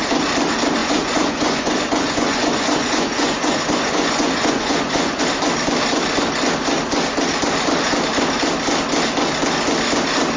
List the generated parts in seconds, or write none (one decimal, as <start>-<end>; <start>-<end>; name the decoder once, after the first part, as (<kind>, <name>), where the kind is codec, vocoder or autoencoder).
0.8-5.2 (vocoder, Vocos)